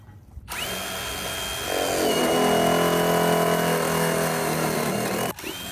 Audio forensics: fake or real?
real